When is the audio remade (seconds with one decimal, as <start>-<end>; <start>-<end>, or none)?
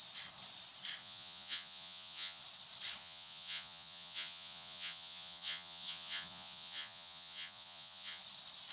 1.0-2.4; 3.0-8.2